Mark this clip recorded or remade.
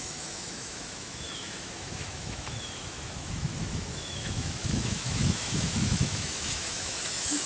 remade